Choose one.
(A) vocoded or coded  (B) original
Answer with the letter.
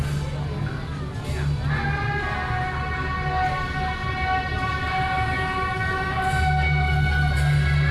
B